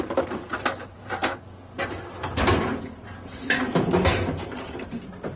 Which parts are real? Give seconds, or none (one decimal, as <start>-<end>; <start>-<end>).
1.2-2.2